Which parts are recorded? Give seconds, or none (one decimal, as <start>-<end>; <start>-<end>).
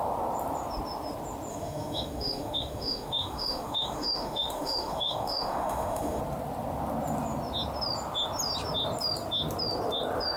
0.0-1.5; 6.2-10.4